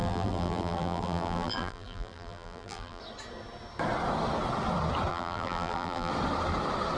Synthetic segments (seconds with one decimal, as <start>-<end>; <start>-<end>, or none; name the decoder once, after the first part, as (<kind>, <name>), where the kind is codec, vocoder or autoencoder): 0.0-3.0 (vocoder, BigVGAN v2); 5.1-6.1